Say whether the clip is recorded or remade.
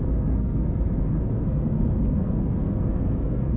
remade